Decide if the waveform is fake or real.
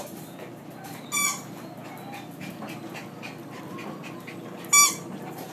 real